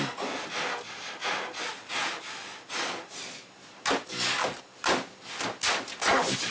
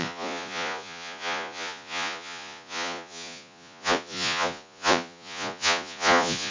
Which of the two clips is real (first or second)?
first